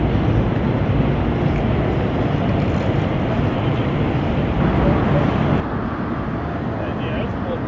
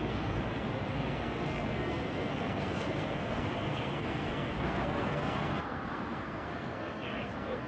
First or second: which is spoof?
second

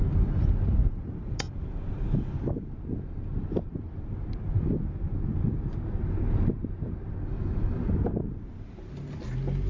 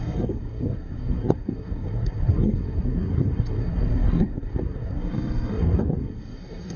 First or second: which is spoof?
second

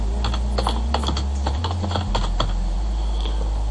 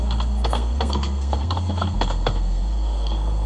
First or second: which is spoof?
second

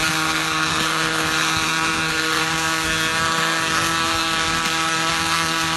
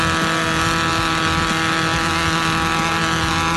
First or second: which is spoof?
first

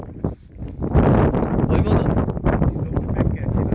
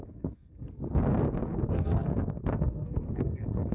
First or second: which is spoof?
second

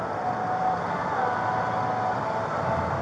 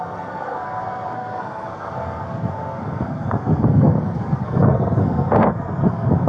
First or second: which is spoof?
second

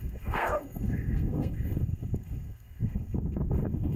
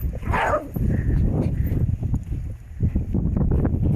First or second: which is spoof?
first